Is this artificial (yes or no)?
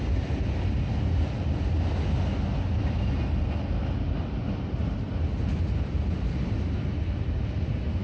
no